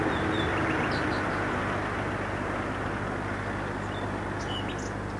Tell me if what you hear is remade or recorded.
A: recorded